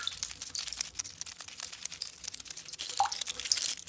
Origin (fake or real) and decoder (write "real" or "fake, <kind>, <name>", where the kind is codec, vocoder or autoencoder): real